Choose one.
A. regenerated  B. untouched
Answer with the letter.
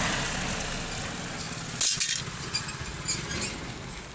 B